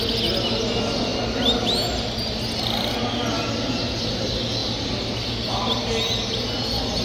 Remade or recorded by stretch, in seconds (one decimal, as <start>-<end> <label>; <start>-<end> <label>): 0.0-7.0 recorded